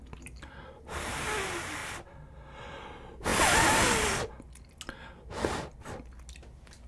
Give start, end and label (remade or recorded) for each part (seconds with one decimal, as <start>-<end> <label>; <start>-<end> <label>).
0.0-6.9 recorded